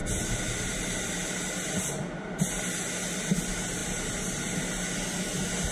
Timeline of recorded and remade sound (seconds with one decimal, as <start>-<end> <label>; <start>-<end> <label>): 0.0-3.8 recorded; 3.8-4.3 remade; 4.3-5.7 recorded